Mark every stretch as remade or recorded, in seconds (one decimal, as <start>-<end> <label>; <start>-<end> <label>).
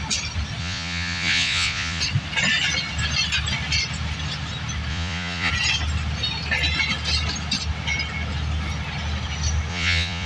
0.0-0.6 recorded; 0.6-2.0 remade; 2.0-4.9 recorded; 4.9-5.5 remade; 5.5-9.7 recorded; 9.7-10.3 remade